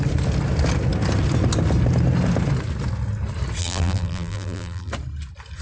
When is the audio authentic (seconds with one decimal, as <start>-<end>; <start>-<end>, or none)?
0.0-3.6; 4.9-5.6